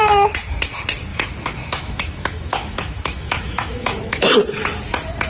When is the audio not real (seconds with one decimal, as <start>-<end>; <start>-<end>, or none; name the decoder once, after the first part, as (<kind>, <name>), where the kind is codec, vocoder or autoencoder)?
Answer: 1.1-4.3 (autoencoder, DAC-VAE)